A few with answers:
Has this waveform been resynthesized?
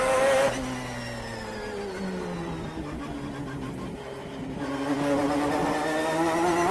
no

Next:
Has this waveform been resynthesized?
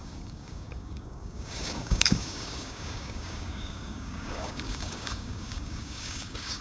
yes